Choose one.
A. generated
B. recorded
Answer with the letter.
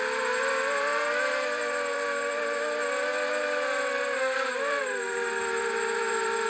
A